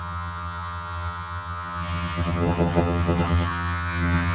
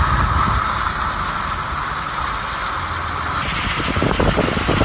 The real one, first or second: second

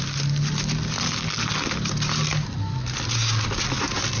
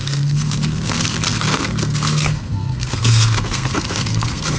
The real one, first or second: first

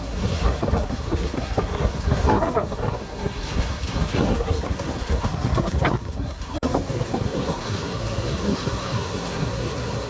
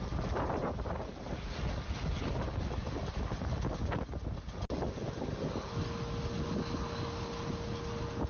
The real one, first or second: second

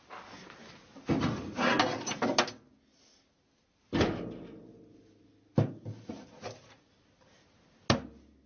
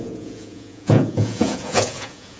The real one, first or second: first